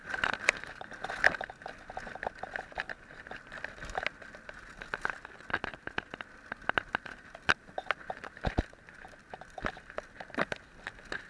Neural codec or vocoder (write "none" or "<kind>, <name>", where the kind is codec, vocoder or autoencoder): none